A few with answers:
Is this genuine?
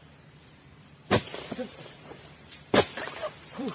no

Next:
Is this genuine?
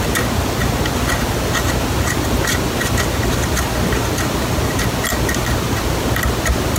yes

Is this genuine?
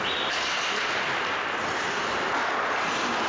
yes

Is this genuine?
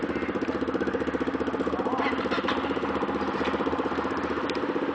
yes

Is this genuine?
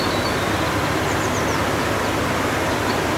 yes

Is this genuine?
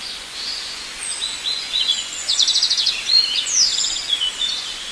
no